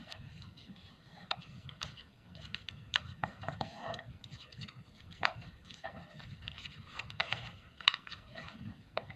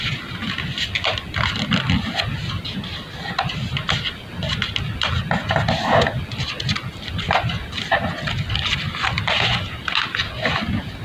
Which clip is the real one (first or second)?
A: second